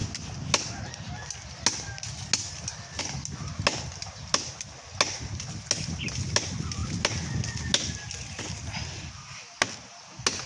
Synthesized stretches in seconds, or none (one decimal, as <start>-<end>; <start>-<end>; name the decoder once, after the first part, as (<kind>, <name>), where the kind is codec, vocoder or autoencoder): none